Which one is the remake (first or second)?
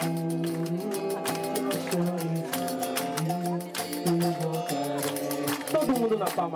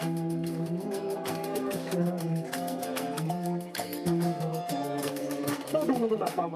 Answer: second